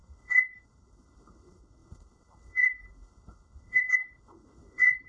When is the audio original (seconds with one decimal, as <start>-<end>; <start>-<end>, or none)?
none